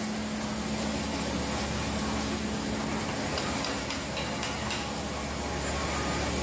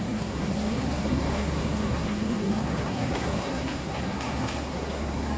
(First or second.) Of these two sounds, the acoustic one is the first